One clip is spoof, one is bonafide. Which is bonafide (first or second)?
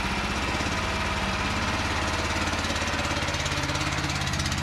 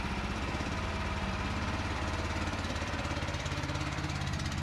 first